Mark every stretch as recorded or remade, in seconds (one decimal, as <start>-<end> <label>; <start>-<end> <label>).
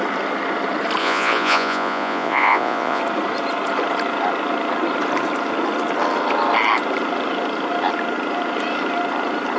0.0-1.0 recorded; 1.0-3.0 remade; 3.0-9.6 recorded